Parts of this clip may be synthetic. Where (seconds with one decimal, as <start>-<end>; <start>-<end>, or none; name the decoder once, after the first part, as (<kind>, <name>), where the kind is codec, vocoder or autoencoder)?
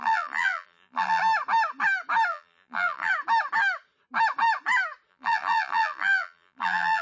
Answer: 0.0-1.2 (vocoder, BigVGAN v2); 2.3-3.1; 5.1-7.0